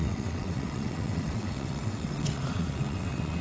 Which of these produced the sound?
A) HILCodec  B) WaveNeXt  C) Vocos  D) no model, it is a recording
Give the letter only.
B